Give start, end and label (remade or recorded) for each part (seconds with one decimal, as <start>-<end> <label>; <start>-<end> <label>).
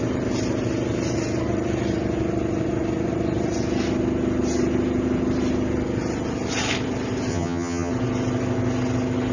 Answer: 0.0-7.3 recorded; 7.3-7.9 remade; 7.9-9.3 recorded